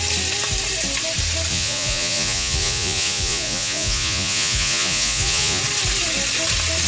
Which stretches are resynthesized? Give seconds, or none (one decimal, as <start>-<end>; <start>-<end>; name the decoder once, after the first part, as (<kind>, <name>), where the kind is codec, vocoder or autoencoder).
1.5-5.6 (vocoder, Vocos)

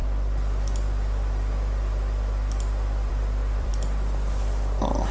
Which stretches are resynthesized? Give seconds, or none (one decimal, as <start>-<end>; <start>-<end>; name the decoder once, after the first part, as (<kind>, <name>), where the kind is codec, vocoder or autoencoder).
3.1-3.7 (vocoder, BigVGAN v2)

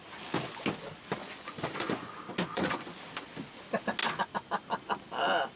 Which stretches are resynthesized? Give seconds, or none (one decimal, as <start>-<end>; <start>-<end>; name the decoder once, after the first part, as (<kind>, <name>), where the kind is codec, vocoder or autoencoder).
1.2-2.1 (vocoder, Vocos); 2.5-3.0

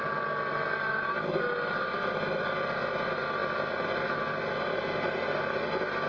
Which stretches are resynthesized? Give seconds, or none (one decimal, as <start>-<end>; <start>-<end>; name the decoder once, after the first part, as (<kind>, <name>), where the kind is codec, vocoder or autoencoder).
none

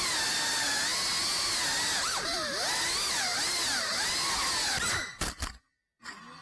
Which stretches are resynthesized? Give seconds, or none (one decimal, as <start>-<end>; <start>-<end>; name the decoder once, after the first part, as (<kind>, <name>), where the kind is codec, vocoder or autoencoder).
none